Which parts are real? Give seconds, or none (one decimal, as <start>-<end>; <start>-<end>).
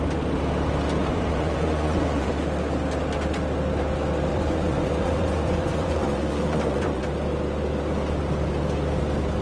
0.0-1.0; 2.3-4.3; 7.1-9.4